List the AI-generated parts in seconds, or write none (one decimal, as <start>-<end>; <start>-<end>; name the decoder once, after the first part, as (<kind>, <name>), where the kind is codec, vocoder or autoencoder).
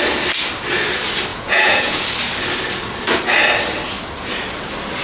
1.3-2.0 (vocoder, Vocos)